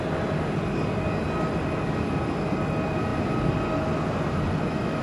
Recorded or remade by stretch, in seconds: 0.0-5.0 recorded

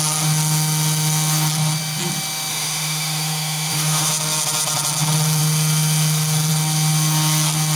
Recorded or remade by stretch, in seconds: 0.0-2.5 recorded; 2.5-4.1 remade; 4.1-7.8 recorded

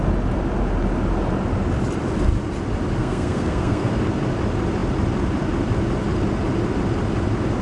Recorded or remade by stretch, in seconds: 0.0-3.0 recorded; 3.0-3.9 remade; 3.9-7.6 recorded

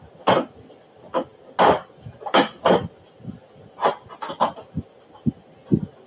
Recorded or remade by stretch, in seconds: 0.0-6.1 recorded

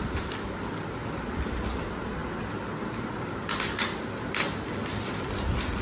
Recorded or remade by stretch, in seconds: 0.0-5.8 recorded

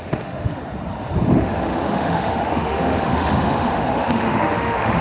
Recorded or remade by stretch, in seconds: 0.0-0.5 remade; 0.5-1.2 recorded; 1.2-5.0 remade

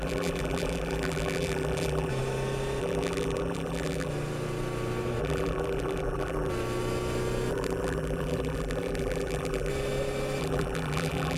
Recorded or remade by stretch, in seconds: 0.0-2.1 remade; 2.1-2.8 recorded; 2.8-4.1 remade; 4.1-5.2 recorded; 5.2-6.5 remade; 6.5-7.5 recorded; 7.5-9.7 remade; 9.7-10.4 recorded; 10.4-11.4 remade